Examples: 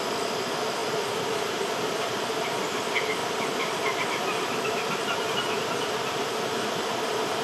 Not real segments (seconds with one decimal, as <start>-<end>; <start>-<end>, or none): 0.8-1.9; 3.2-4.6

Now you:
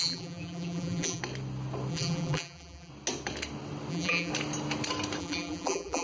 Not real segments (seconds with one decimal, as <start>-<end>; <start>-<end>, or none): 0.0-1.2; 1.9-2.9; 3.9-4.3; 5.2-6.0

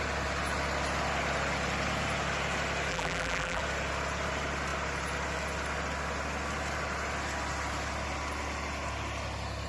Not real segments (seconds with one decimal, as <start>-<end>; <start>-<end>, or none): 2.9-3.6

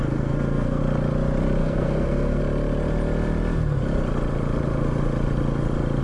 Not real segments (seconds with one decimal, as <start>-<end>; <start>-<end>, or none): 0.0-0.8; 1.6-2.4

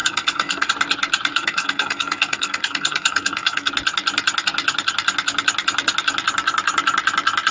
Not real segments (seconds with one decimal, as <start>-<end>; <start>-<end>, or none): 0.0-0.7; 1.3-3.7

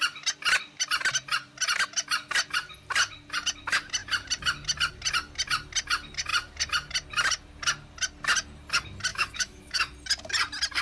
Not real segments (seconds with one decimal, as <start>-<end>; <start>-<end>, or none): 9.1-9.8